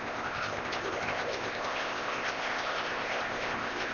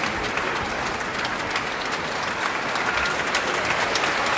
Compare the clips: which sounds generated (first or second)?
first